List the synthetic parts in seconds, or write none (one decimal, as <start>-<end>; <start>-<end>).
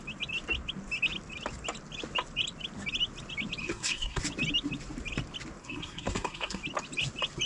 3.6-4.2; 5.6-6.6